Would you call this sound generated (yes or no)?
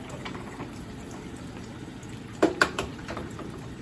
yes